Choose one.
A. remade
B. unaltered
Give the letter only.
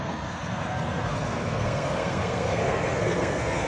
A